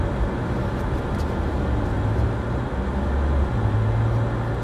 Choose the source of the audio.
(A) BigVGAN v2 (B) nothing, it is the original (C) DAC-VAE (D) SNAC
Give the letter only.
B